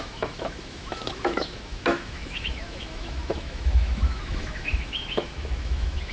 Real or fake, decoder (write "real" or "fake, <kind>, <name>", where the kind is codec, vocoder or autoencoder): fake, autoencoder, DAC-VAE